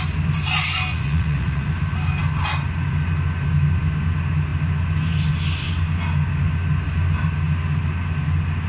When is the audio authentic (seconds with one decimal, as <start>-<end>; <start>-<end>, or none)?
0.0-0.9; 1.7-8.7